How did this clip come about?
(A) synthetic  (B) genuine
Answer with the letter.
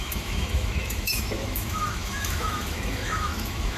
A